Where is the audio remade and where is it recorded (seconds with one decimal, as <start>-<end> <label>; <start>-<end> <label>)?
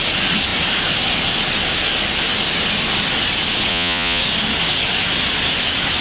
0.0-3.7 recorded; 3.7-4.2 remade; 4.2-6.0 recorded